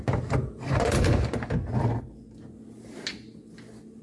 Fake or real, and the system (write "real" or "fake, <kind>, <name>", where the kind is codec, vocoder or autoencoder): real